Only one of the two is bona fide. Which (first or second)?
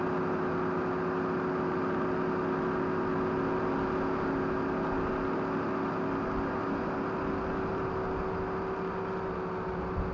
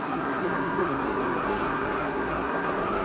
first